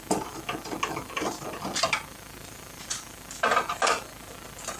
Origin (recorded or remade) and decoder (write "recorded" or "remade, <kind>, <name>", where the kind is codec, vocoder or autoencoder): recorded